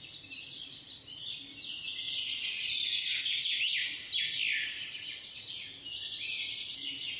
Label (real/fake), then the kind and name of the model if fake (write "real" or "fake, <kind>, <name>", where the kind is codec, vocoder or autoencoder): real